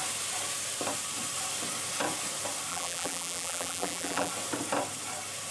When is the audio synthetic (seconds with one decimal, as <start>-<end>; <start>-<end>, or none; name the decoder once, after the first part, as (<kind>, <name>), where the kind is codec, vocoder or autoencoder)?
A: 2.7-4.3 (vocoder, BigVGAN v2)

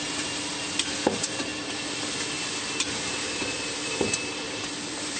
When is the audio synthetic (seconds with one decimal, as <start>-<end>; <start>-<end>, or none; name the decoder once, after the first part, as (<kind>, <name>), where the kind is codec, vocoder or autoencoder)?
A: none

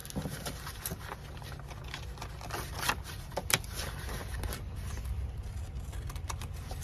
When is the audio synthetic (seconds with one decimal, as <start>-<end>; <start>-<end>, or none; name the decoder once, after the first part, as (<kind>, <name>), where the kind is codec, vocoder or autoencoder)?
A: none

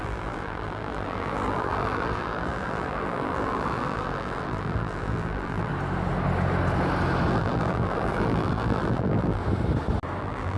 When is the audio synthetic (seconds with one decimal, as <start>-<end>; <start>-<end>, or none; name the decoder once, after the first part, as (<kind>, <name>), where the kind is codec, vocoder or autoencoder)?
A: 0.0-5.7 (vocoder, BigVGAN v2); 7.3-9.4; 10.2-10.6